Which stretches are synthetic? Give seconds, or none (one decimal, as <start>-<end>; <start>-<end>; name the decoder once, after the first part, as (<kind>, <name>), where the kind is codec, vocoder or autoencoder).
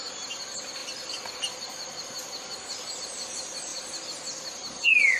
0.0-3.7 (vocoder, BigVGAN v2)